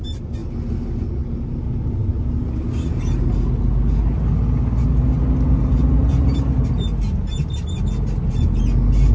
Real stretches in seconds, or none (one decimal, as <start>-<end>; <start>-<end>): 0.0-9.1